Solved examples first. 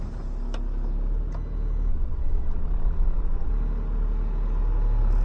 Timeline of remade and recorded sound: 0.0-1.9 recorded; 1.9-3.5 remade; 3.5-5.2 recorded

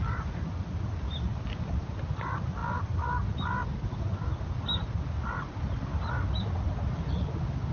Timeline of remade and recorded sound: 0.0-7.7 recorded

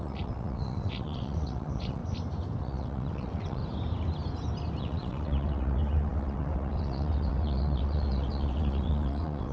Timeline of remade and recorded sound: 0.0-2.0 remade; 2.0-2.6 recorded; 2.6-3.6 remade; 3.6-4.8 recorded; 4.8-9.5 remade

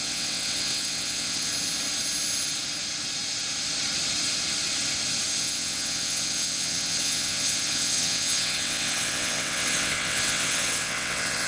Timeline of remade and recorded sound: 0.0-1.5 remade; 1.5-5.4 recorded; 5.4-11.5 remade

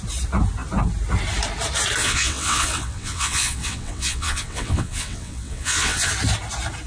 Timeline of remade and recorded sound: 0.0-2.0 recorded; 2.0-6.1 remade; 6.1-6.9 recorded

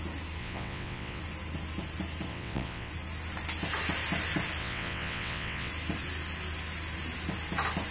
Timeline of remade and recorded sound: 0.0-0.4 recorded; 0.4-1.2 remade; 1.2-2.3 recorded; 2.3-2.9 remade; 2.9-4.6 recorded; 4.6-5.7 remade; 5.7-7.9 recorded

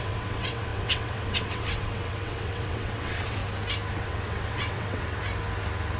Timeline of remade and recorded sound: 0.0-3.4 remade; 3.4-3.9 recorded; 3.9-5.2 remade; 5.2-6.0 recorded

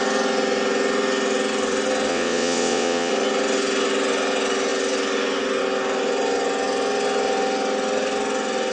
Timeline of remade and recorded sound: 0.0-2.1 recorded; 2.1-3.1 remade; 3.1-8.7 recorded